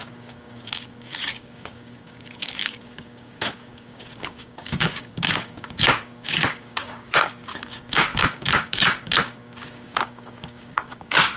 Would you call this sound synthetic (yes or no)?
yes